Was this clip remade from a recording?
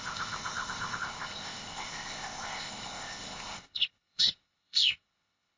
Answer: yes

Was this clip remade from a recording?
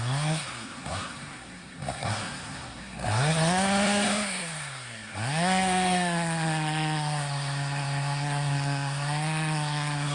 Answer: yes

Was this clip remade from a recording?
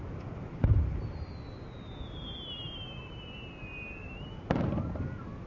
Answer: no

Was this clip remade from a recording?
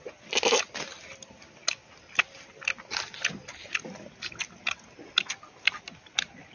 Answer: no